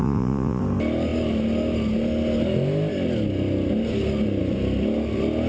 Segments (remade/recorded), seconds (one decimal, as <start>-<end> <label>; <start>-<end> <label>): 0.0-0.6 remade; 0.6-5.5 recorded